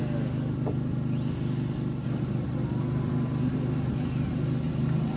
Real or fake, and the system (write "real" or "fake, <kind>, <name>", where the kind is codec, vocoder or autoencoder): real